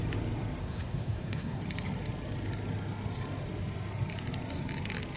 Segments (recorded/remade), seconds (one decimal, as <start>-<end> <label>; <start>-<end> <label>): 0.0-0.6 recorded; 0.6-1.6 remade; 1.6-5.2 recorded